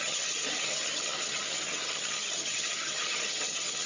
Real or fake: fake